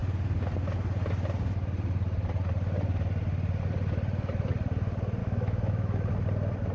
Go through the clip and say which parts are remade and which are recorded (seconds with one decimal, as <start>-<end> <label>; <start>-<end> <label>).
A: 0.0-5.2 recorded; 5.2-6.1 remade; 6.1-6.7 recorded